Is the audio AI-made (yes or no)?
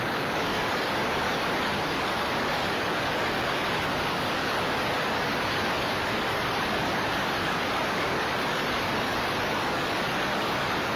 yes